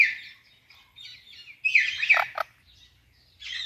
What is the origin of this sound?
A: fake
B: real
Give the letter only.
B